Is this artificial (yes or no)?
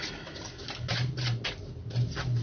no